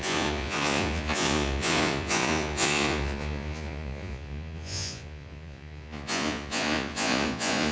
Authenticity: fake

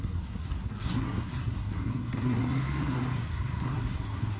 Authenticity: fake